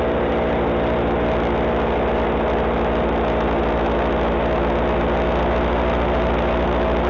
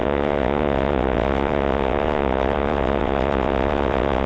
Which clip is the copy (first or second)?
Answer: second